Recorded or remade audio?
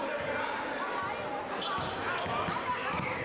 recorded